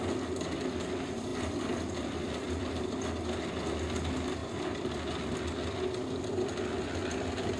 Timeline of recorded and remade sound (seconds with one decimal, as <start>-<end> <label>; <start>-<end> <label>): 0.0-1.3 recorded; 1.3-2.8 remade; 2.8-7.6 recorded